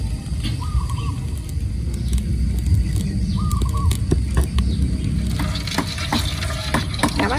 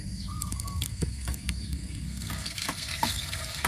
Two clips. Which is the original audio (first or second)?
first